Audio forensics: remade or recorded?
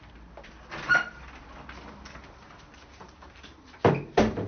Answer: recorded